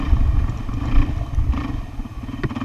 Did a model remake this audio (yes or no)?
no